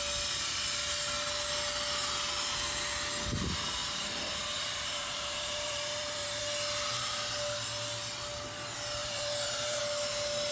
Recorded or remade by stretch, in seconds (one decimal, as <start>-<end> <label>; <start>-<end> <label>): 0.0-3.8 recorded; 3.8-6.4 remade; 6.4-9.0 recorded; 9.0-9.8 remade; 9.8-10.5 recorded